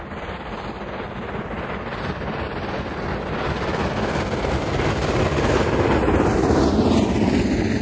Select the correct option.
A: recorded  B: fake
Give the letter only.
A